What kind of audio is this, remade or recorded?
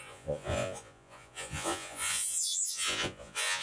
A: remade